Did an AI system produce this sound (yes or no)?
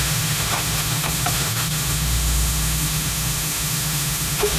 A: yes